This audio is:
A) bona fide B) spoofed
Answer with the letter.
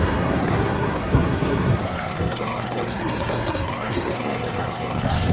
B